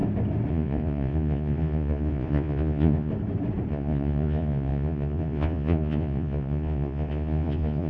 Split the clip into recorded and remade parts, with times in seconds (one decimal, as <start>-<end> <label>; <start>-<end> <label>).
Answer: 0.0-0.5 recorded; 0.5-3.1 remade; 3.1-3.7 recorded; 3.7-7.9 remade